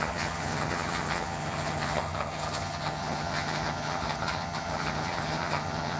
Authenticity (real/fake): fake